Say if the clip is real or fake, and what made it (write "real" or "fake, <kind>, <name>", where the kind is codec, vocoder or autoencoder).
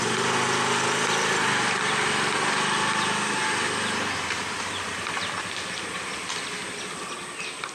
real